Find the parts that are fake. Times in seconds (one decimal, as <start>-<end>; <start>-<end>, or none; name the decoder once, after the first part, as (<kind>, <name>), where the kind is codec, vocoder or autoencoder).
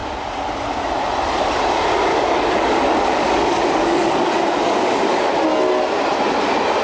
2.1-5.3 (codec, DAC)